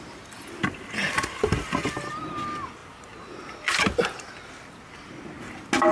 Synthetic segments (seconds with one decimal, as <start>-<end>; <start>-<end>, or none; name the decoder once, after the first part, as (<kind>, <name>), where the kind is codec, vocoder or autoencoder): none